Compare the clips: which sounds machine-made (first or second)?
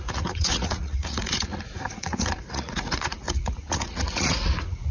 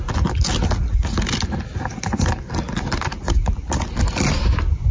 first